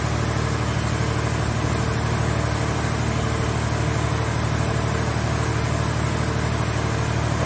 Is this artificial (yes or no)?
no